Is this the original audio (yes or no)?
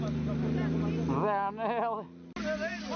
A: yes